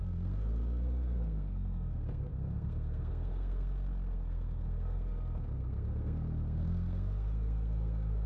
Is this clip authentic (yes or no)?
no